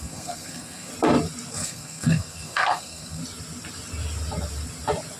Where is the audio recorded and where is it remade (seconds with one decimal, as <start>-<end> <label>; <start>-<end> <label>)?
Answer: 0.0-0.9 remade; 0.9-1.5 recorded; 1.5-3.2 remade; 3.2-5.2 recorded